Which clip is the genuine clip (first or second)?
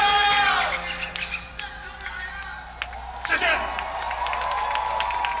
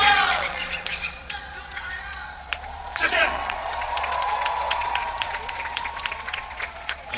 first